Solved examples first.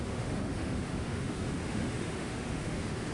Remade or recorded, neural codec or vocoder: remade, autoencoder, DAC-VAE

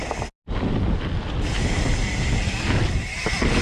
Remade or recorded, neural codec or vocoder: recorded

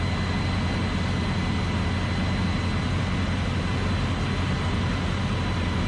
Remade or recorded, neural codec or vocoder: recorded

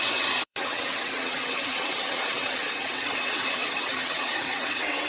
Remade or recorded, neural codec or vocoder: remade, vocoder, WaveNeXt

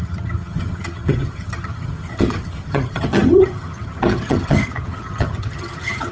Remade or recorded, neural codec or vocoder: remade, vocoder, HiFi-GAN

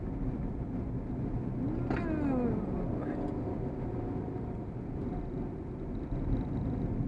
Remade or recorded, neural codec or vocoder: recorded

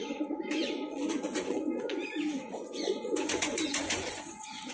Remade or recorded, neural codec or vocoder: remade, vocoder, Vocos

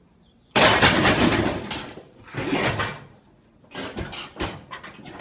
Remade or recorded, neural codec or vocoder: recorded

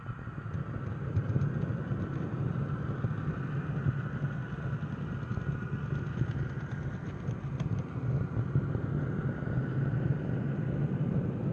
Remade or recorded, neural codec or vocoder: recorded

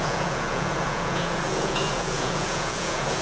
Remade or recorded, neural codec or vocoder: remade, vocoder, Vocos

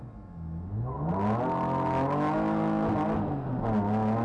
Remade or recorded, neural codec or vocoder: recorded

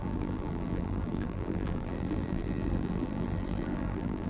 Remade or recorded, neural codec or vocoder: remade, vocoder, BigVGAN v2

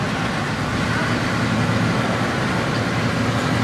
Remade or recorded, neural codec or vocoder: recorded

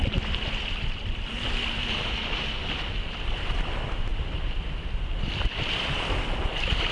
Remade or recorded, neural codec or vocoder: remade, vocoder, BigVGAN v2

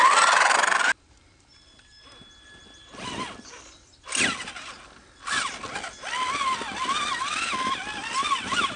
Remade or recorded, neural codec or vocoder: recorded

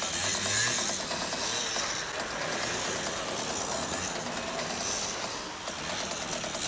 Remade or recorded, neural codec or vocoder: recorded